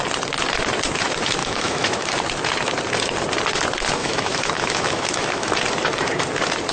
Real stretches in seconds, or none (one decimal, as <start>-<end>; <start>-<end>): 0.0-1.4; 2.1-4.0; 5.5-6.7